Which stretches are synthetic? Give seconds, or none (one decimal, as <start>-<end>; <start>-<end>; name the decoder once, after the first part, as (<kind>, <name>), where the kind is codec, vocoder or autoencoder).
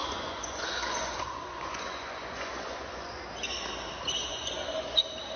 0.0-3.2 (vocoder, Vocos); 4.3-5.0